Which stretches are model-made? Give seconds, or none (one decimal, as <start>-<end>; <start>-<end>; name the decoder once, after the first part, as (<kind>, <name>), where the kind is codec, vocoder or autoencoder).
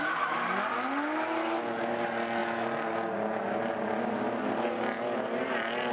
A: none